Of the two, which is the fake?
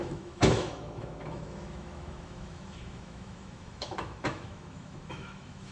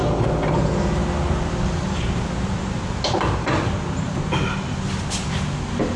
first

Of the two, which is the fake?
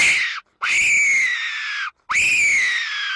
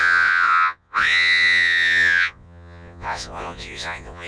second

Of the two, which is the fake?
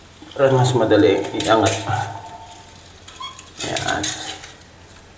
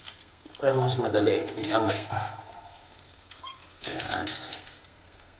second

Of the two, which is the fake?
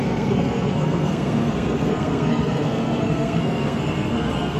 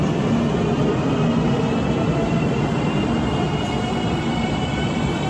first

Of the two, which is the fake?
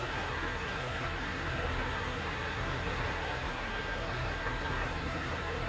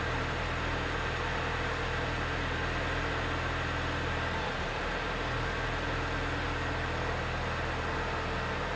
first